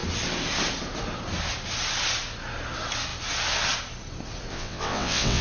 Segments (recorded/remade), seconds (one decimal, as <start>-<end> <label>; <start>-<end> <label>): 0.0-4.5 recorded; 4.5-5.4 remade